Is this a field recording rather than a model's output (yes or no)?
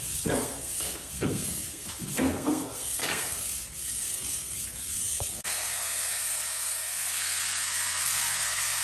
no